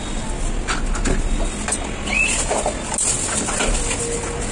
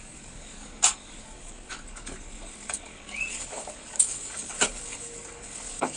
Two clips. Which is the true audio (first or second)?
first